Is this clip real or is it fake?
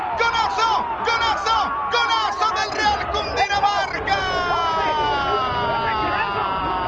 real